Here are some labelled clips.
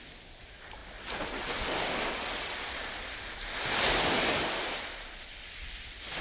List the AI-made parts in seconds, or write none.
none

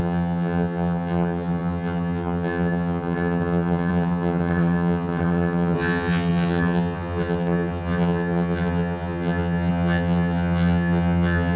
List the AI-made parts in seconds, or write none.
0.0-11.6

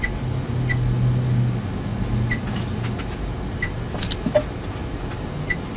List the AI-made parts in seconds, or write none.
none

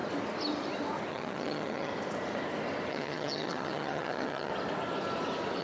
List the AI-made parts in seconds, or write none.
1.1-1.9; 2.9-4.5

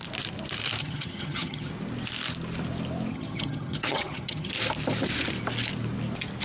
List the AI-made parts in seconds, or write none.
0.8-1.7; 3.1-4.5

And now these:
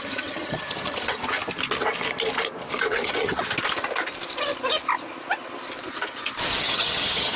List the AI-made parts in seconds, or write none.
0.0-1.2; 2.9-3.4; 6.6-7.4

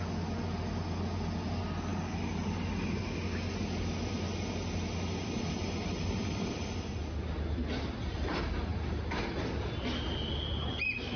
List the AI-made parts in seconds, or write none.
none